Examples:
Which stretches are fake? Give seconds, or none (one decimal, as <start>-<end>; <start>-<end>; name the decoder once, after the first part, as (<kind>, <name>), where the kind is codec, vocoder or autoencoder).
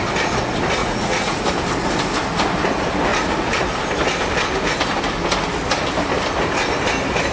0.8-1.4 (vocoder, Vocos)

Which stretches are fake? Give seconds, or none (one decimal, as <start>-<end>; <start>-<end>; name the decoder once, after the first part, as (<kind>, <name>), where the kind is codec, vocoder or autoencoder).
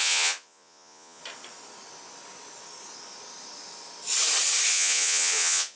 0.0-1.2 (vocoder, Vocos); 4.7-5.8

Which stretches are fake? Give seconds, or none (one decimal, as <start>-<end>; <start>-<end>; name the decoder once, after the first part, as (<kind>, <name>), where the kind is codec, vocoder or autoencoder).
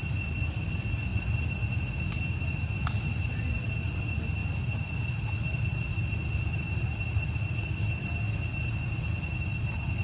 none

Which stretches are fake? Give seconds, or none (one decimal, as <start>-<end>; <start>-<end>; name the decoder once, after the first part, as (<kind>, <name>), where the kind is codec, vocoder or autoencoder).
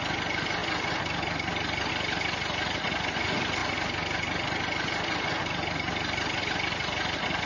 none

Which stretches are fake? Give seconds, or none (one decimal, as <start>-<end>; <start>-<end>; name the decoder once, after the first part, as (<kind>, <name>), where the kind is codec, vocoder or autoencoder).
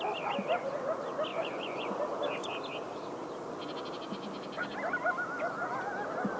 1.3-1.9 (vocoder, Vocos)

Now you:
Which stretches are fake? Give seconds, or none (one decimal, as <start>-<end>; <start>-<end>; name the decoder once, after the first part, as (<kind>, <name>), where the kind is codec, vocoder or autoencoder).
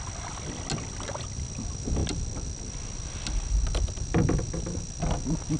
none